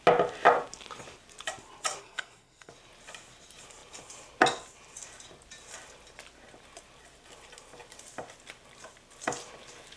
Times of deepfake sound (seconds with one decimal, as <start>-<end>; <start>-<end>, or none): 2.0-2.7